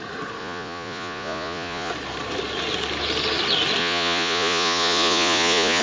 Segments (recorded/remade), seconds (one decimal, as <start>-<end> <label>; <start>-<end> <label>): 0.0-0.4 recorded; 0.4-1.9 remade; 1.9-3.8 recorded; 3.8-5.8 remade